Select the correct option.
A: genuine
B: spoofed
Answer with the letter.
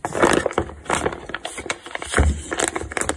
A